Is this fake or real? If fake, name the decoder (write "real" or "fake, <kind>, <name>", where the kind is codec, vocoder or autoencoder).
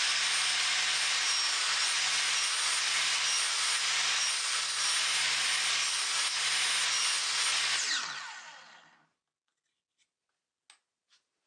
real